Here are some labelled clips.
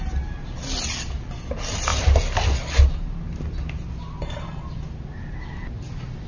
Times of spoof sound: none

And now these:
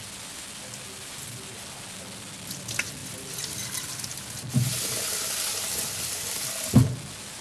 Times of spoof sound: none